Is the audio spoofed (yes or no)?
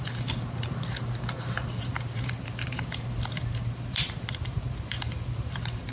yes